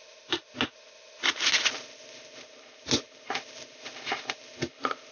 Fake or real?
real